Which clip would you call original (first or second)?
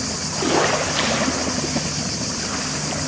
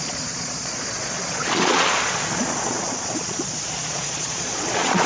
first